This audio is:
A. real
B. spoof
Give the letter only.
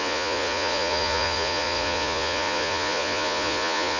B